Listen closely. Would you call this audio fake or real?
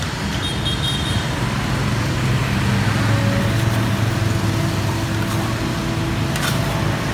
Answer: real